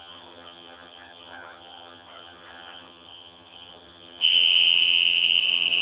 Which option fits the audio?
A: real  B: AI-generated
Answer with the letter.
B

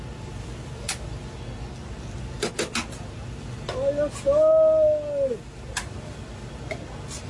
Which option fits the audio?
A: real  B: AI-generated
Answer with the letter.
A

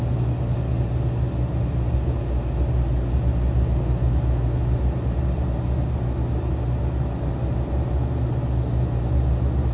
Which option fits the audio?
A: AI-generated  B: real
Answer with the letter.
B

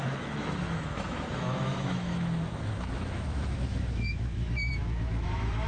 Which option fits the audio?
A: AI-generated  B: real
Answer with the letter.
A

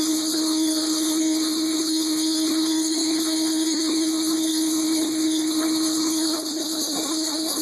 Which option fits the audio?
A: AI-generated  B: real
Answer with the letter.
A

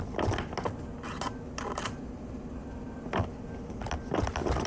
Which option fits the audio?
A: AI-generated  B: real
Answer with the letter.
B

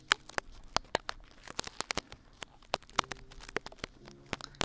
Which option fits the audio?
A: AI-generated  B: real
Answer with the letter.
B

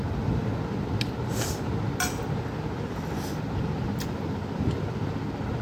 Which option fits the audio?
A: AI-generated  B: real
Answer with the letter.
B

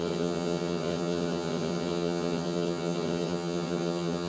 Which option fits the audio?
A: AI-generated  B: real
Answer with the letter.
A